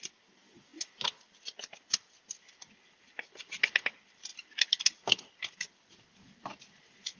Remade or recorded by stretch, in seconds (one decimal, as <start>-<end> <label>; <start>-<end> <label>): 0.0-7.2 recorded